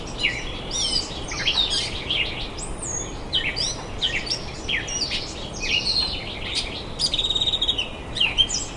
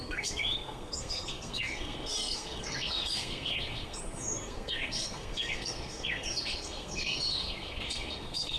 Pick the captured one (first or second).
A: first